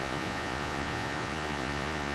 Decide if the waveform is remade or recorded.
remade